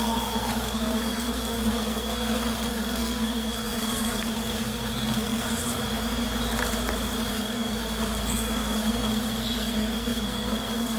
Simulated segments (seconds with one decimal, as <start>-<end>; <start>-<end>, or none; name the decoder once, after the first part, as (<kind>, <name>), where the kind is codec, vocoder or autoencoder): 0.0-5.6 (codec, SNAC); 7.3-11.0